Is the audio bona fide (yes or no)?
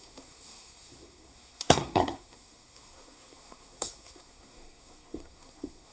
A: no